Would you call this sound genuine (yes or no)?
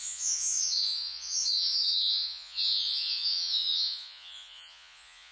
no